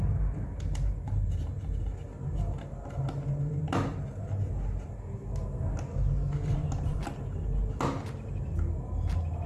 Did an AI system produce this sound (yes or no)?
no